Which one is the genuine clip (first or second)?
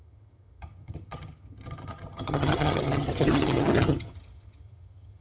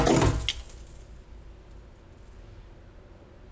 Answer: second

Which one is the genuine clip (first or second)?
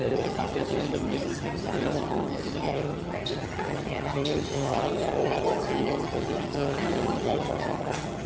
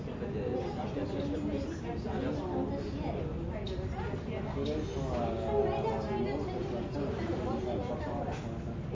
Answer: second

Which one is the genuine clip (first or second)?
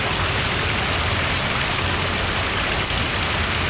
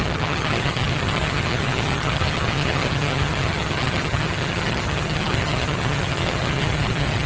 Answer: first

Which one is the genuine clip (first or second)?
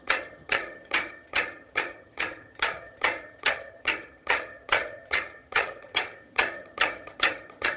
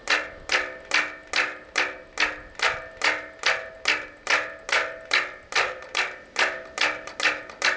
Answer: second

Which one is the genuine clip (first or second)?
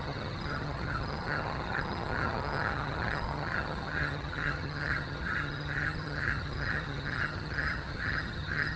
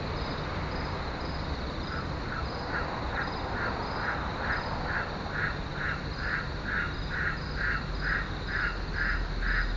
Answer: second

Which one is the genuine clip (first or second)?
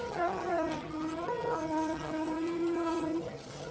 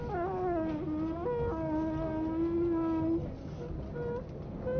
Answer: second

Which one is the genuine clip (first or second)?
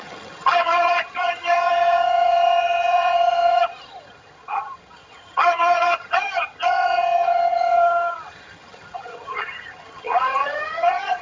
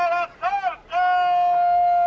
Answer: second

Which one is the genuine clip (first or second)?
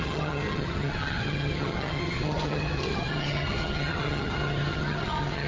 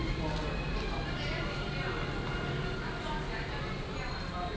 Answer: second